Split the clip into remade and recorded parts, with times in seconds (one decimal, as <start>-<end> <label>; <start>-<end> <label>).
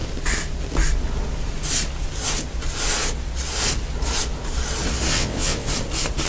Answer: 0.0-5.1 recorded; 5.1-5.7 remade; 5.7-6.3 recorded